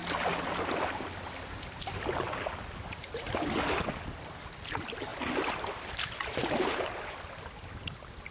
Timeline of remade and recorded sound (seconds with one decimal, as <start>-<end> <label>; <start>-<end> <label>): 0.0-8.3 recorded